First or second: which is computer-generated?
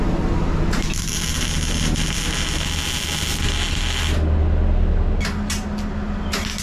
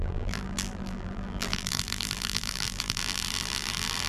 second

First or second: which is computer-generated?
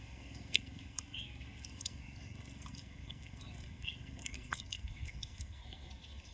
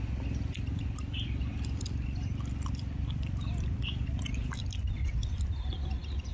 first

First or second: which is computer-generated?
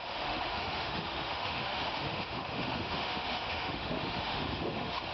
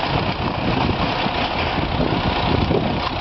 first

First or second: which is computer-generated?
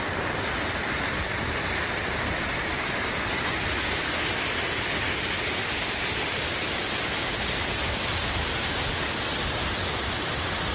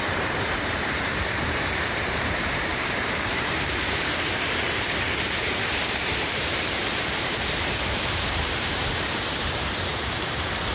second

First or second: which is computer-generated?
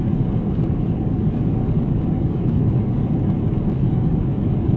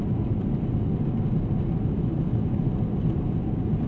first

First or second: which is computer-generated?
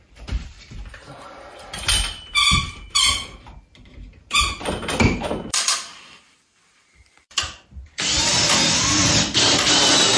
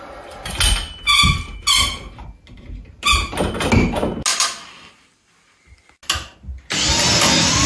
first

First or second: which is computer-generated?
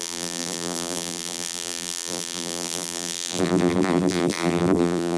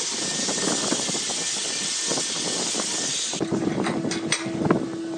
first